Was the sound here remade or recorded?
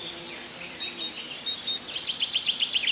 recorded